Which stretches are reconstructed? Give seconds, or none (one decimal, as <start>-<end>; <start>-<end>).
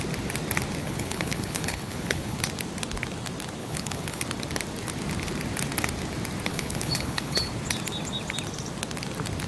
0.8-2.4; 3.6-4.2; 6.5-7.5